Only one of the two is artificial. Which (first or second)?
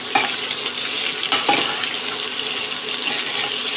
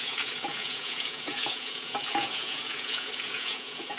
second